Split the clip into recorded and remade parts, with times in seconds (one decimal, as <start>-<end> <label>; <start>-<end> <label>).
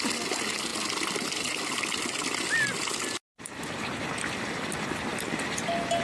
0.0-6.0 recorded